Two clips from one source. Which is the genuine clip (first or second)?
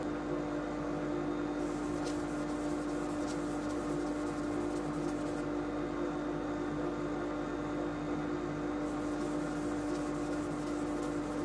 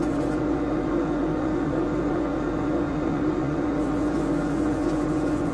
first